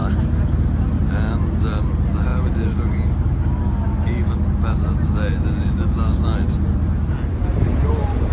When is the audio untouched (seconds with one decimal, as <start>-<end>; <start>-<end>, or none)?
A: 0.0-8.3